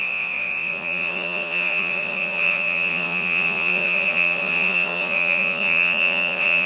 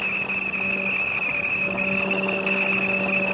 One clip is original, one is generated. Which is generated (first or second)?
first